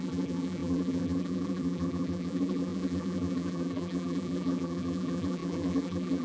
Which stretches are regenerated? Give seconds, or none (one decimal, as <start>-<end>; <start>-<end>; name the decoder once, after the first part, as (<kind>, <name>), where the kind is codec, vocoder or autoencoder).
0.0-6.2 (vocoder, BigVGAN v2)